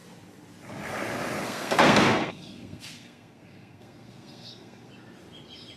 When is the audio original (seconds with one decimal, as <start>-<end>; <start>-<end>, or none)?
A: 0.0-1.4; 4.9-5.8